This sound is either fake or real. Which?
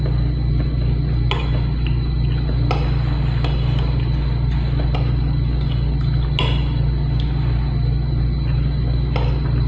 real